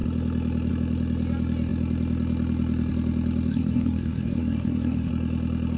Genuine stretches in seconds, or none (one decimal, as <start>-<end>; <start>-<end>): 0.0-3.5; 5.1-5.8